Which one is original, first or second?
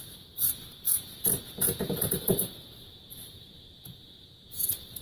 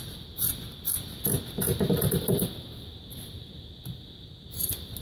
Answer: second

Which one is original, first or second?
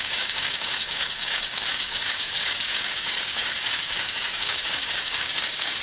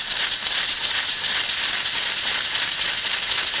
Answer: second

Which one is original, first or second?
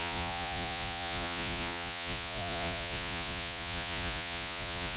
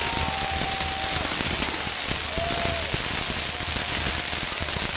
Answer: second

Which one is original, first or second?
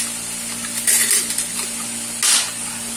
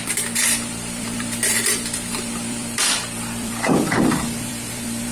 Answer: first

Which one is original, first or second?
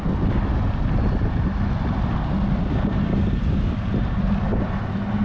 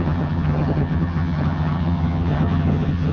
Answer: first